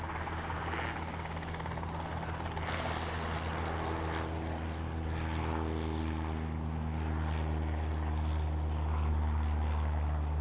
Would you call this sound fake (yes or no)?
no